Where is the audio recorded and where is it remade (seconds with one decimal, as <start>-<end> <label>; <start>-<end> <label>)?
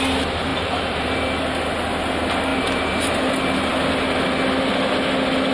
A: 0.0-0.5 recorded; 0.5-1.2 remade; 1.2-2.5 recorded; 2.5-3.3 remade; 3.3-5.5 recorded